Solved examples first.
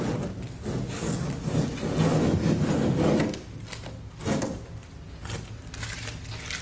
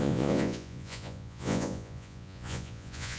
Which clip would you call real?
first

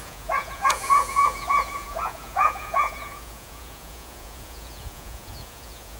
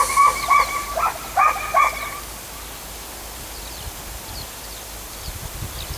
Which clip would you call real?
second